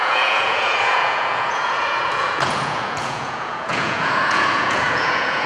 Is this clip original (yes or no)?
no